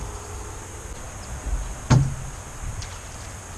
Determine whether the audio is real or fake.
real